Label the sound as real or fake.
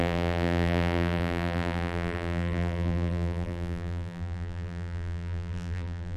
fake